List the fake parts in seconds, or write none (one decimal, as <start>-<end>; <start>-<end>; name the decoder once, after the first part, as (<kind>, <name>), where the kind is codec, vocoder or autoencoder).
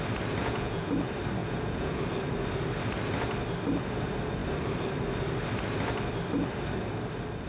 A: 0.4-0.9 (vocoder, Vocos); 1.4-2.0